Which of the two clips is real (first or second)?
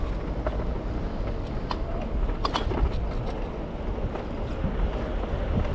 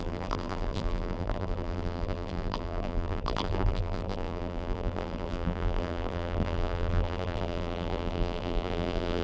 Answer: first